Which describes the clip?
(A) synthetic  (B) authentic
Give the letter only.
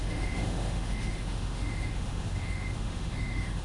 A